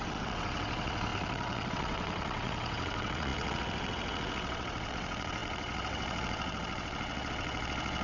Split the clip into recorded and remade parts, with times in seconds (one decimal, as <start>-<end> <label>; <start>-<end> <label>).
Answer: 0.0-8.0 remade